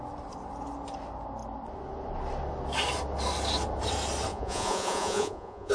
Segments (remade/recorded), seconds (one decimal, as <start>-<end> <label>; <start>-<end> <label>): 0.0-4.3 recorded; 4.3-5.7 remade

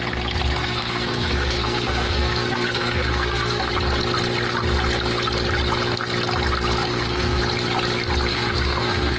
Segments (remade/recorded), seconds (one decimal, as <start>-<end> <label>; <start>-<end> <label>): 0.0-0.6 recorded; 0.6-3.7 remade; 3.7-6.9 recorded; 6.9-7.4 remade; 7.4-8.3 recorded; 8.3-9.2 remade

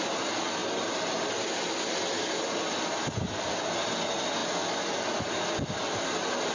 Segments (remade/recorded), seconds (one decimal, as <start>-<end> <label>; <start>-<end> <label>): 0.0-6.5 recorded